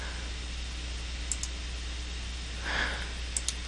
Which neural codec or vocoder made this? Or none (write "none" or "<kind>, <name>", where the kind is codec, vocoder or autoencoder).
none